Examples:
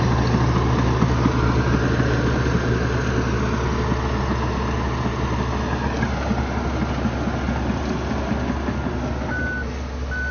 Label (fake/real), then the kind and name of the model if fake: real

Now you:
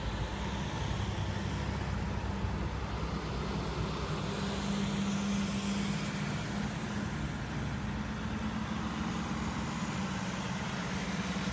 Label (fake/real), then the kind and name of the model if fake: real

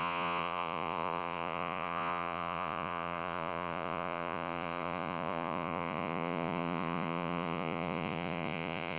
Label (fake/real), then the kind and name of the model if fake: fake, vocoder, Vocos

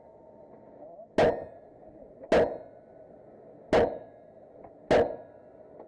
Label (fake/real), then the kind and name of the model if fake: real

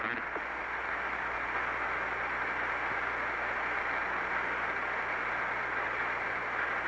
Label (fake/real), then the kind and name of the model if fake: real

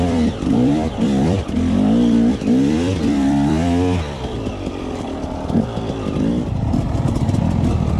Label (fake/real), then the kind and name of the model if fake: fake, vocoder, BigVGAN v2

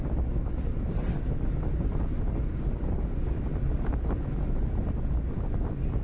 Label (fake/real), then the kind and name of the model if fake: real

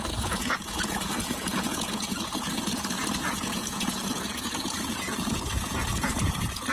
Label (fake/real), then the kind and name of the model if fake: fake, vocoder, Vocos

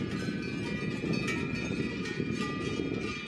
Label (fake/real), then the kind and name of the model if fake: real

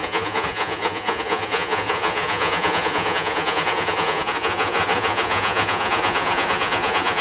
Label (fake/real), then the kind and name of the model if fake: fake, vocoder, Vocos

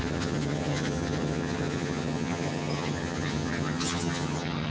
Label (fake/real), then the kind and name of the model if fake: fake, vocoder, HiFi-GAN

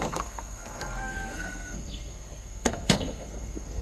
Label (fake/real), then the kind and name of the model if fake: fake, codec, SNAC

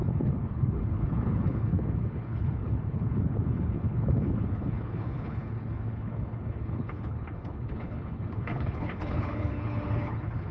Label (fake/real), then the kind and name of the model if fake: fake, codec, HILCodec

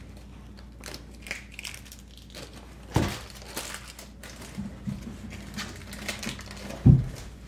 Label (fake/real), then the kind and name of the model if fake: real